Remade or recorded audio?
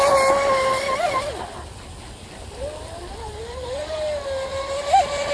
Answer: recorded